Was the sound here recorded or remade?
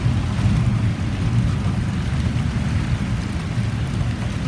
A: recorded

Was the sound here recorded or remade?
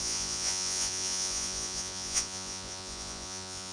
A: remade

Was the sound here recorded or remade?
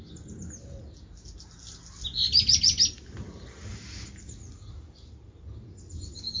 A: recorded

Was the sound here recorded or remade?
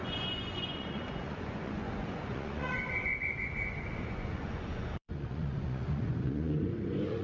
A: remade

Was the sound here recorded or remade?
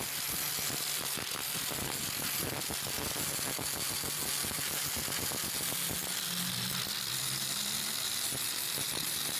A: recorded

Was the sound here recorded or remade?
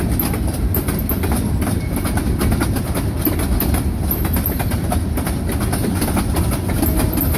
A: recorded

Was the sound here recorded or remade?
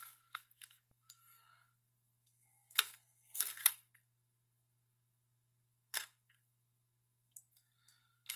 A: remade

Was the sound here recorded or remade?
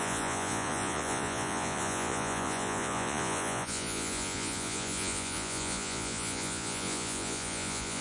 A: remade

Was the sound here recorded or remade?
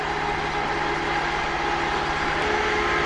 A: recorded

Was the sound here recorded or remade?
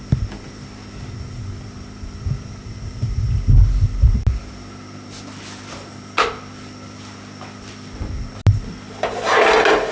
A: recorded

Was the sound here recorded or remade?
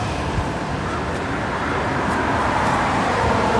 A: remade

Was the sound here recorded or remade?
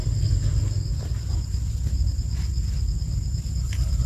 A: recorded